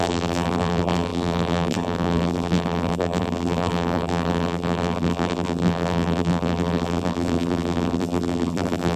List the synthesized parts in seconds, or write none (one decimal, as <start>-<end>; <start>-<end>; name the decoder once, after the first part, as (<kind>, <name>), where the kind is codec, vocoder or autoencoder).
0.0-9.0 (vocoder, BigVGAN v2)